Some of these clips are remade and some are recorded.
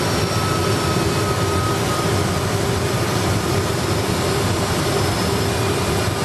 recorded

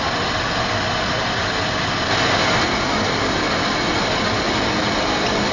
recorded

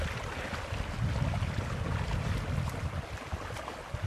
recorded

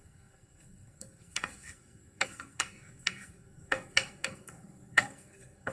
remade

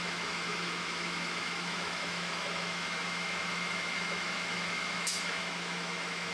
remade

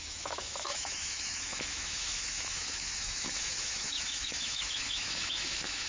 remade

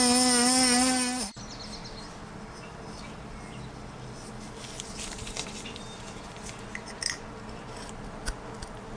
recorded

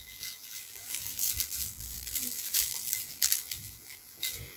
remade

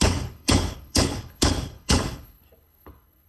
remade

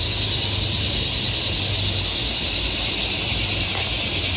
recorded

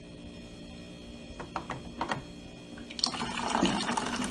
recorded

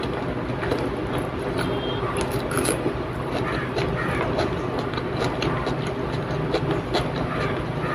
recorded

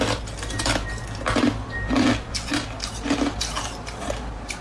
recorded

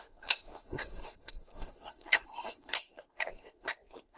remade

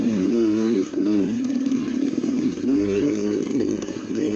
remade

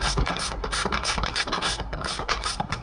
remade